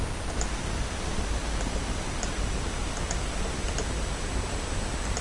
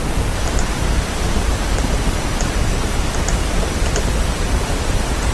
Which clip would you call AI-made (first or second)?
second